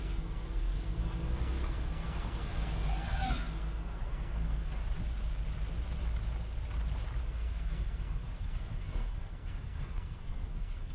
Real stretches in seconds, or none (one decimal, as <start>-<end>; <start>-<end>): 4.8-7.2